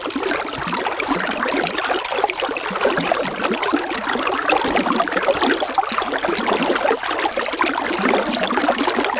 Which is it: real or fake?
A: real